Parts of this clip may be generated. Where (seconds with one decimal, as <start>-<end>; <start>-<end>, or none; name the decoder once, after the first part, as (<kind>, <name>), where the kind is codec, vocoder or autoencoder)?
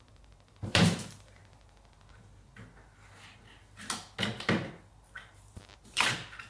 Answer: 0.0-1.4 (vocoder, BigVGAN v2); 5.3-6.5